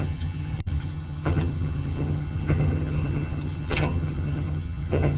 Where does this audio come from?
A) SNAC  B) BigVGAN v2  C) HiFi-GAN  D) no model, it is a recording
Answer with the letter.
C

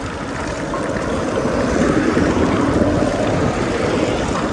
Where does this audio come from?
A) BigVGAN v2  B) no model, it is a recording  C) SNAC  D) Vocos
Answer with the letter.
B